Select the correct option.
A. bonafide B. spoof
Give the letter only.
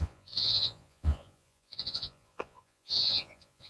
B